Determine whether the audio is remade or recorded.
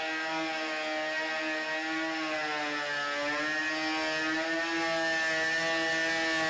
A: recorded